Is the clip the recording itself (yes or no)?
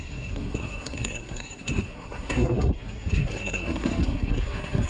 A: no